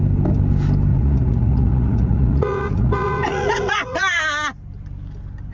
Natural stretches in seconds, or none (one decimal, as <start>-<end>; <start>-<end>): 0.0-0.9; 4.2-5.5